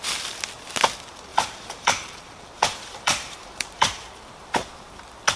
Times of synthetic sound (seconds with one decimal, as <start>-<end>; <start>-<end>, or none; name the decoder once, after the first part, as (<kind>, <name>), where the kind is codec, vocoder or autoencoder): 1.3-4.5 (vocoder, BigVGAN v2)